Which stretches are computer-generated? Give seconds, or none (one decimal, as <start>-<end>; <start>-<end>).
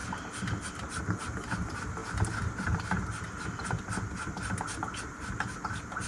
none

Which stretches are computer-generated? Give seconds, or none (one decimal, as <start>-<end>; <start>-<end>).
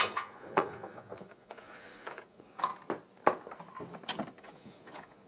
0.0-2.7; 4.4-5.3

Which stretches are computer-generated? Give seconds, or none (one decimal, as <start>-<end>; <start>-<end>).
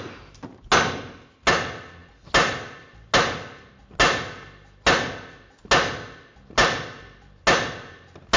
none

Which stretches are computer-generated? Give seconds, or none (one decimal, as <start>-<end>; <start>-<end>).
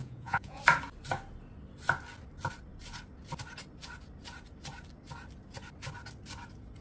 0.0-0.6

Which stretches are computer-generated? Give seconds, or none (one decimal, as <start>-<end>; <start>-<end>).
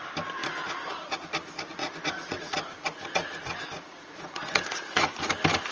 0.4-0.9; 1.8-5.2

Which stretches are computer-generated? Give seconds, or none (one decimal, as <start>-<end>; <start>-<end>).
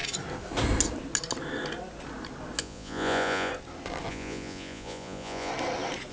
2.6-3.5; 4.1-5.5